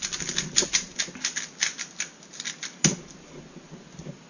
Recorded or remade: recorded